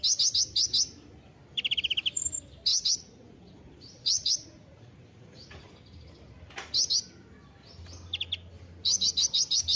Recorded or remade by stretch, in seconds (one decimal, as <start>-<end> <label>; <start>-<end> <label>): 0.0-2.7 recorded; 2.7-5.7 remade; 5.7-9.8 recorded